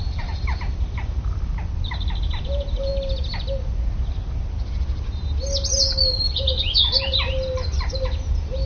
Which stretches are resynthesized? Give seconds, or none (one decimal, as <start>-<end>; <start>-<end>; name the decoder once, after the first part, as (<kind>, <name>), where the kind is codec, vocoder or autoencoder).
0.0-1.5 (vocoder, BigVGAN v2); 2.3-2.9; 7.3-8.7